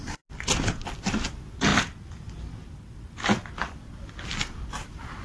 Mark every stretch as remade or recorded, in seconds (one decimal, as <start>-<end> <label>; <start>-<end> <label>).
0.0-5.2 recorded